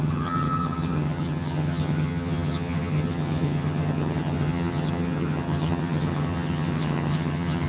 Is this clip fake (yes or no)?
yes